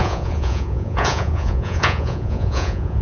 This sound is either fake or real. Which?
fake